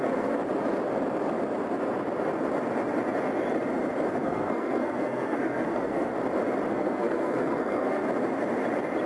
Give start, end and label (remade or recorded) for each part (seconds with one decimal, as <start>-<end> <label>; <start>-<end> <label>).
0.0-0.4 remade; 0.4-4.1 recorded; 4.1-6.1 remade; 6.1-6.7 recorded; 6.7-8.0 remade; 8.0-9.1 recorded